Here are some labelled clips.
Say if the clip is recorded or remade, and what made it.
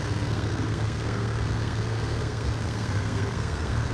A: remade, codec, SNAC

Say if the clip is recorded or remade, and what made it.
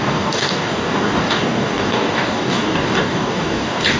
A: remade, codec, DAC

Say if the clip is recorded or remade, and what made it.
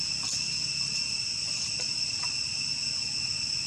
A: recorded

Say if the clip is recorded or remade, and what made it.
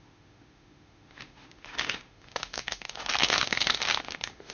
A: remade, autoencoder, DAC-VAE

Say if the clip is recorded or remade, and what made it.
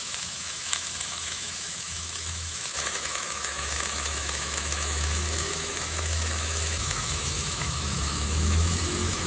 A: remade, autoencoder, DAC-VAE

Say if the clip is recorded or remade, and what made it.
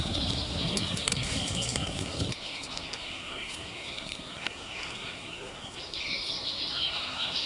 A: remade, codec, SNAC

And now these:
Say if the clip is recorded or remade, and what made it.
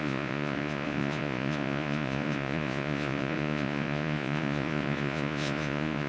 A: remade, vocoder, Vocos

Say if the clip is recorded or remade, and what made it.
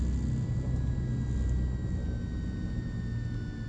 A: recorded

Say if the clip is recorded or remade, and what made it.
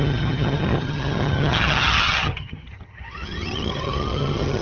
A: remade, vocoder, HiFi-GAN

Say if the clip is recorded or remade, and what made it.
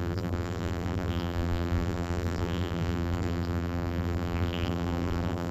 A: remade, vocoder, BigVGAN v2